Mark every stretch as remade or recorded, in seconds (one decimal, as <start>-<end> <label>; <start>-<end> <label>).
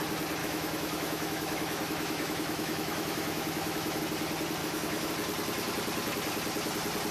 0.0-0.4 recorded; 0.4-4.0 remade; 4.0-4.6 recorded; 4.6-5.1 remade; 5.1-7.1 recorded